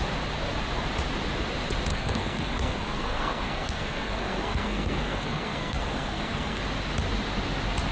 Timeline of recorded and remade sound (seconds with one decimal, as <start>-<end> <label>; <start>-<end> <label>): 0.0-1.9 recorded; 1.9-6.6 remade; 6.6-7.9 recorded